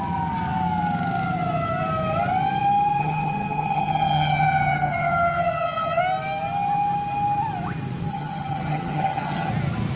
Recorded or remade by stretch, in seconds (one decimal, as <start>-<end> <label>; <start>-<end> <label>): 0.0-3.0 recorded; 3.0-6.0 remade; 6.0-8.1 recorded; 8.1-9.5 remade; 9.5-10.0 recorded